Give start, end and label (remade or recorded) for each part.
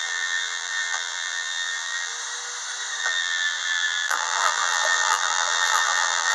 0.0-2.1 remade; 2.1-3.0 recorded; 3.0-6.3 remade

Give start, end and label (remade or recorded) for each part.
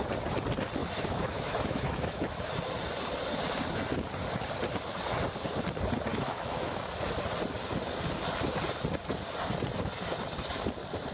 0.0-0.8 recorded; 0.8-2.5 remade; 2.5-6.1 recorded; 6.1-6.7 remade; 6.7-11.1 recorded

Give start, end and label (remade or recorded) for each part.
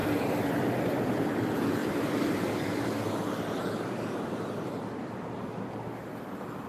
0.0-0.5 remade; 0.5-1.8 recorded; 1.8-4.8 remade; 4.8-6.7 recorded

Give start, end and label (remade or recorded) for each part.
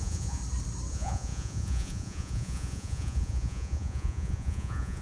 0.0-0.4 remade; 0.4-0.9 recorded; 0.9-5.0 remade